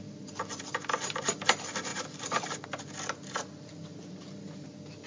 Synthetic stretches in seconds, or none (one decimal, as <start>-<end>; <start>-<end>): none